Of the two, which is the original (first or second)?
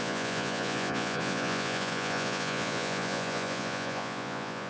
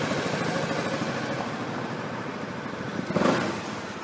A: second